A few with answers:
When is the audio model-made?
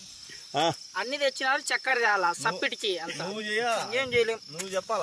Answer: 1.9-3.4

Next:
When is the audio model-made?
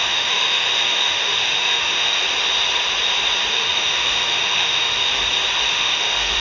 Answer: 0.0-2.2; 3.5-5.1; 5.7-6.4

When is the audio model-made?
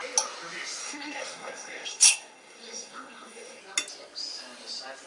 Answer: 0.8-3.6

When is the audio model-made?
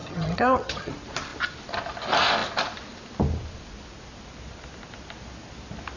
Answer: 0.0-0.9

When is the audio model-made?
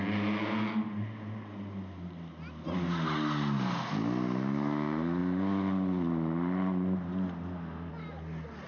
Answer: none